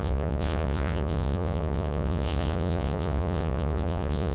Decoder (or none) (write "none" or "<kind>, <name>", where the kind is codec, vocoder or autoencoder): vocoder, Vocos